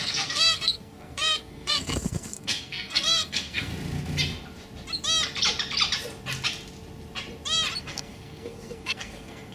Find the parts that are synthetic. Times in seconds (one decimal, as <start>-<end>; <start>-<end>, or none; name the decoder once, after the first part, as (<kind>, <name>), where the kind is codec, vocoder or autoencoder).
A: 0.0-3.7 (codec, SNAC); 7.8-9.5